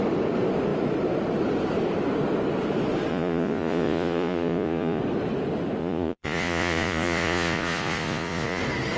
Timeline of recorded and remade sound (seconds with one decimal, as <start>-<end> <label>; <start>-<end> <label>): 0.0-3.1 recorded; 3.1-5.0 remade; 5.0-5.8 recorded; 5.8-8.6 remade; 8.6-9.0 recorded